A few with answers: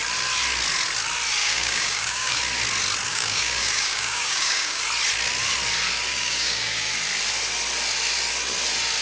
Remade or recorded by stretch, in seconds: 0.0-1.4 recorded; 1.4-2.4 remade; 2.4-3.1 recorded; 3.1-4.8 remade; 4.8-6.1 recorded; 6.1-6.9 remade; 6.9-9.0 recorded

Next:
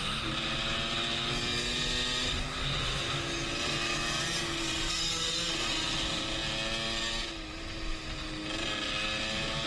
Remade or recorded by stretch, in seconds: 0.0-9.7 recorded

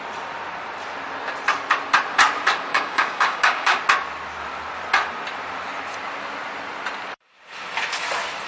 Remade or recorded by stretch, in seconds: 0.0-2.7 recorded; 2.7-3.8 remade; 3.8-8.5 recorded

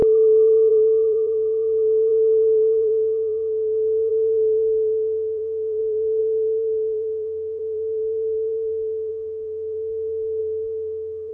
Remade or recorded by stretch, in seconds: 0.0-11.3 remade

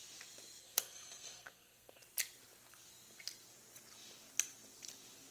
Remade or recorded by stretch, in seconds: 0.0-0.6 recorded; 0.6-2.0 remade; 2.0-5.3 recorded